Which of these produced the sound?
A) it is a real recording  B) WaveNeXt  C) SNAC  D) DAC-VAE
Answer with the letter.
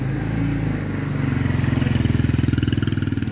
A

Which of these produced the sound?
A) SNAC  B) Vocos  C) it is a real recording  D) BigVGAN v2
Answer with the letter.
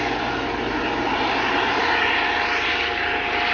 C